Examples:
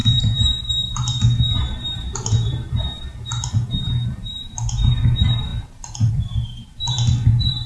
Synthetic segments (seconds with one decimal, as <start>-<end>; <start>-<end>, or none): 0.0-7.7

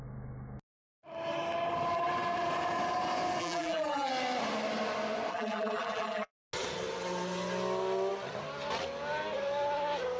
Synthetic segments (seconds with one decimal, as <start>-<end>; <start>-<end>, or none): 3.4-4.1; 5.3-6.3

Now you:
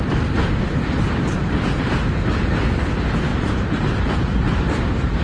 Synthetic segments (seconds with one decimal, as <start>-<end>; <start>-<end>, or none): 3.3-5.2

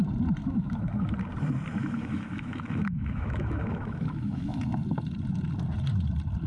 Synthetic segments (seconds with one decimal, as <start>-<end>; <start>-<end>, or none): 0.4-0.9; 1.8-4.6

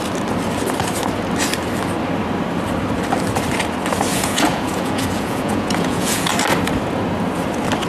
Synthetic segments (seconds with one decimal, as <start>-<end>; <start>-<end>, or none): 4.1-6.3